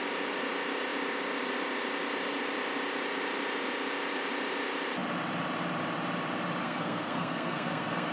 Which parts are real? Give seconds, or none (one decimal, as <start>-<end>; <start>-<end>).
0.0-6.6